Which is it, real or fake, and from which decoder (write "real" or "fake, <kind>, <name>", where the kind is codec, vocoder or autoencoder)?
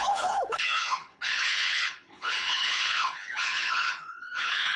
fake, codec, HILCodec